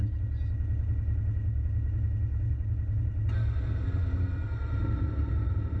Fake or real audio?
real